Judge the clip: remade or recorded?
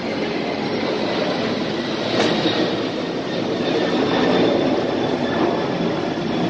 recorded